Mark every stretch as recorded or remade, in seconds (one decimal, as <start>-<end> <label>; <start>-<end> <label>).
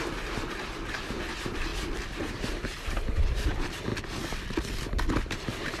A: 0.0-1.7 remade; 1.7-2.2 recorded; 2.2-3.9 remade; 3.9-5.2 recorded; 5.2-5.8 remade